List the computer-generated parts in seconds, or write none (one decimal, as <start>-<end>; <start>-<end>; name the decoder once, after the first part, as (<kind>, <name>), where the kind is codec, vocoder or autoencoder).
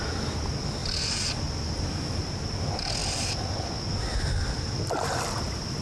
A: 0.0-5.8 (vocoder, BigVGAN v2)